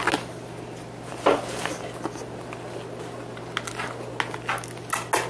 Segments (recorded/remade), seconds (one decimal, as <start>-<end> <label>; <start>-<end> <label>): 0.0-5.3 recorded